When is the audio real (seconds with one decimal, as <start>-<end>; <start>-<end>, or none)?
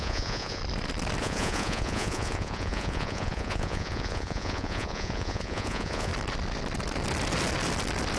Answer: 0.6-1.2; 6.1-8.2